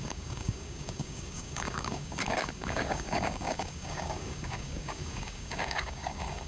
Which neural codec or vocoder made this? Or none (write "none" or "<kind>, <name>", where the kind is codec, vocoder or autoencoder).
codec, DAC